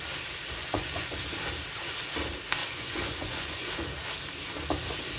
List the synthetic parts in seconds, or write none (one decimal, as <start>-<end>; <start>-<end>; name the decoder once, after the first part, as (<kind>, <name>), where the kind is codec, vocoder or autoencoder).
0.6-1.2 (vocoder, Vocos); 2.6-3.7

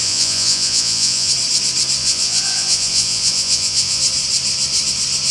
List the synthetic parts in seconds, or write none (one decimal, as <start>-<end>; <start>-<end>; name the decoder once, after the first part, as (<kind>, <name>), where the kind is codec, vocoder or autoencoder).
0.0-1.3 (vocoder, Vocos); 2.0-4.0